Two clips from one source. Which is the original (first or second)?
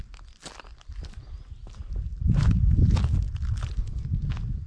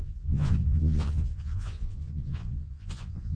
first